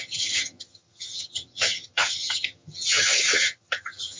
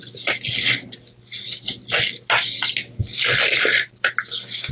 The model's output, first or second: first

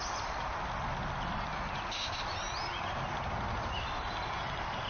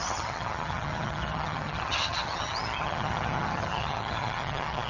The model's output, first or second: second